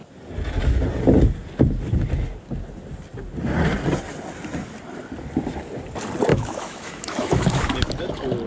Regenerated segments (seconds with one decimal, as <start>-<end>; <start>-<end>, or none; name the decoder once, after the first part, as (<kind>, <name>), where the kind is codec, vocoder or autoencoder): 6.3-7.7 (autoencoder, DAC-VAE)